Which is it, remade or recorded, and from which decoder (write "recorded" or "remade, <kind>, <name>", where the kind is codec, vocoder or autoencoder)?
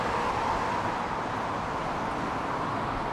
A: recorded